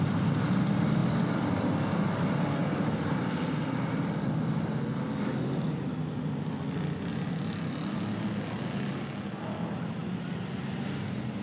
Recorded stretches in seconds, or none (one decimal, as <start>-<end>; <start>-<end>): 0.0-7.1; 8.4-11.4